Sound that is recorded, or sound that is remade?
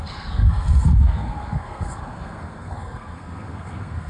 remade